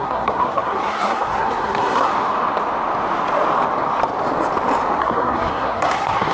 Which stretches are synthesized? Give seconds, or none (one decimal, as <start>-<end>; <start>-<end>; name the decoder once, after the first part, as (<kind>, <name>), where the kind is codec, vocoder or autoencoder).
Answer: 0.0-2.1 (codec, SNAC); 5.0-6.3